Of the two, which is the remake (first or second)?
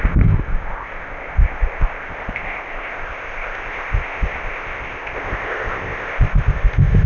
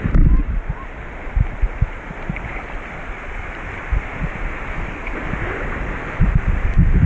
first